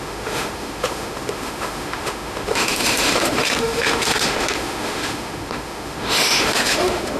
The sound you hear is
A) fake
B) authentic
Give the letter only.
A